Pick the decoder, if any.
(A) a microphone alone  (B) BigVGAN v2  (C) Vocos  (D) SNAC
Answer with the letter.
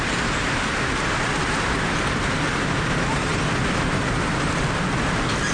A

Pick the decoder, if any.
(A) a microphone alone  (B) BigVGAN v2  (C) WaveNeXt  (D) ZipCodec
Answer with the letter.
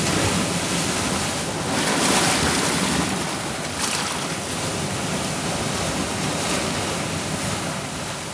A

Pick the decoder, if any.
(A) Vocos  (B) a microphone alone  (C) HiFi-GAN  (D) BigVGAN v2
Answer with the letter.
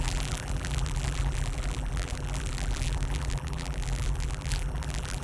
D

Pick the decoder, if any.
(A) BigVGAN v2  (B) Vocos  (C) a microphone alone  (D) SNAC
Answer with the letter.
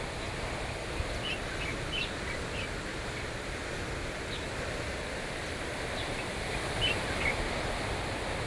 C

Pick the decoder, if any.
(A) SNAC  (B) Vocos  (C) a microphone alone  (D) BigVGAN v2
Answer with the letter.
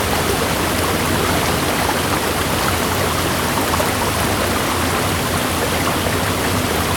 C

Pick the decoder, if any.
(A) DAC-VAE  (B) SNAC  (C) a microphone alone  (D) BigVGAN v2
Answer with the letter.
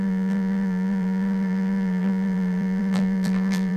D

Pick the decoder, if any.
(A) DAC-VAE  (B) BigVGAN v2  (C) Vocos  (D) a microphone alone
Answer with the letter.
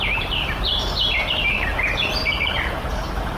B